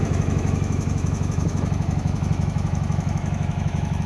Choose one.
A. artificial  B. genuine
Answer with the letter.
A